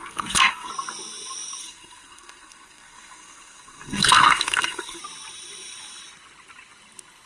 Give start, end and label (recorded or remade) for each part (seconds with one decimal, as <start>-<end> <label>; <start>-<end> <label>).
0.0-0.7 remade; 0.7-1.6 recorded; 1.6-5.0 remade; 5.0-7.3 recorded